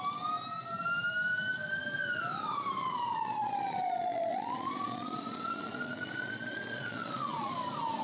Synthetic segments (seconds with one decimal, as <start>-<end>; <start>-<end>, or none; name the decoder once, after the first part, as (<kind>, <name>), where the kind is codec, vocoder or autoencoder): 2.8-7.5 (vocoder, Vocos)